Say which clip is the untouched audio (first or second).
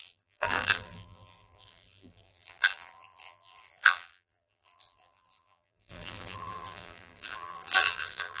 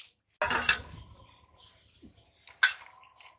second